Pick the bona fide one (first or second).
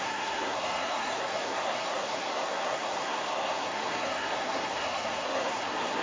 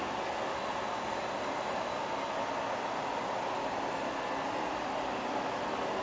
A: second